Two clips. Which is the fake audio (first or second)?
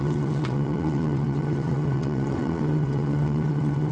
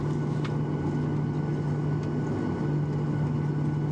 first